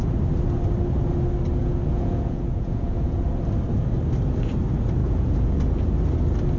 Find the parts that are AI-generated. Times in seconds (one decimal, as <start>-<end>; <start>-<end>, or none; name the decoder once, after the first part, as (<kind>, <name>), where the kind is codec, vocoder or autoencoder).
1.6-3.3 (vocoder, Vocos); 5.0-5.6